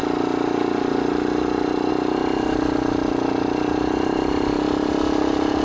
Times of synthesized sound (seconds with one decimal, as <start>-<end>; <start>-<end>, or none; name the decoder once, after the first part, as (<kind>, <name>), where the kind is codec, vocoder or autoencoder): none